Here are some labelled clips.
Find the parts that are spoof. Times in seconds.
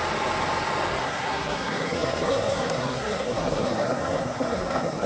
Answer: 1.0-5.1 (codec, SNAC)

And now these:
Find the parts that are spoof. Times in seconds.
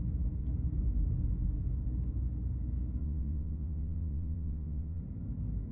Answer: 3.0-5.0 (vocoder, WaveNeXt)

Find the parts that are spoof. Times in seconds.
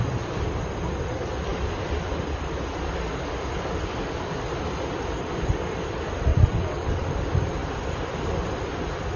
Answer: 6.3-7.1 (vocoder, WaveNeXt)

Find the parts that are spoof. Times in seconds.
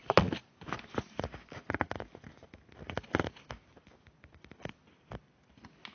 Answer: none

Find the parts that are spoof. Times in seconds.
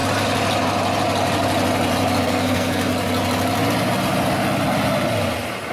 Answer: 2.2-2.9 (codec, SNAC)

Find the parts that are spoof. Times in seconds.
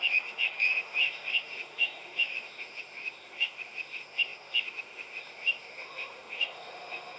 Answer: 0.0-7.2 (autoencoder, DAC-VAE)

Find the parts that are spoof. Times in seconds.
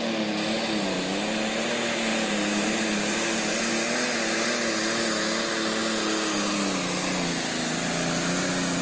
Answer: 2.1-3.7 (vocoder, BigVGAN v2)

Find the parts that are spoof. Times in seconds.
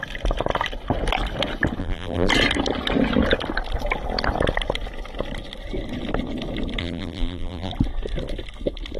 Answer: 1.8-2.3 (vocoder, BigVGAN v2); 6.8-7.7